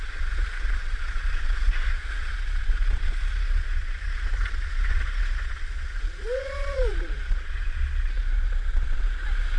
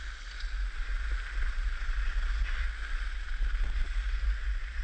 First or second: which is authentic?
second